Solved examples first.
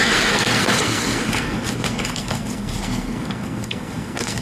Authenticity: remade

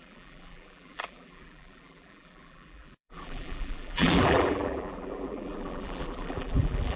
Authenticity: remade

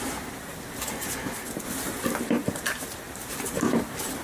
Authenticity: recorded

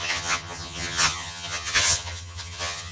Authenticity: remade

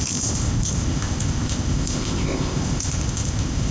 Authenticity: remade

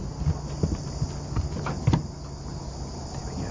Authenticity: recorded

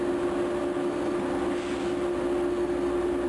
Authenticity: remade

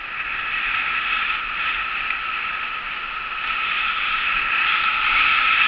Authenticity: recorded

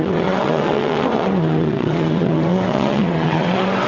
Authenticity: remade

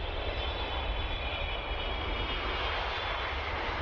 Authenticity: recorded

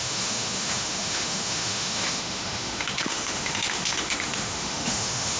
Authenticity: remade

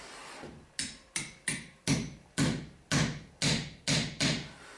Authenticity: recorded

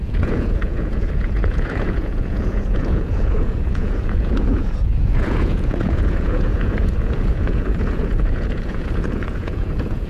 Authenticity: remade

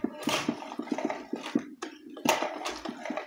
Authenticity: recorded